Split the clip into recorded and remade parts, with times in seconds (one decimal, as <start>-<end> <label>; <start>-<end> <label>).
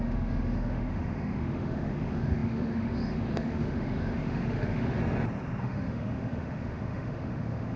0.0-5.0 remade; 5.0-5.6 recorded; 5.6-7.8 remade